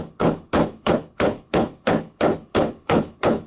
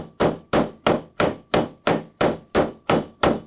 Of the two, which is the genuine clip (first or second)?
second